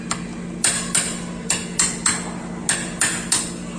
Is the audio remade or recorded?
recorded